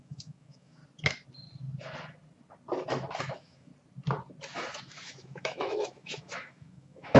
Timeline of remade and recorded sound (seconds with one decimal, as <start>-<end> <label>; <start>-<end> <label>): 0.0-0.8 remade; 0.8-3.2 recorded; 3.2-3.7 remade; 3.7-4.8 recorded; 4.8-7.2 remade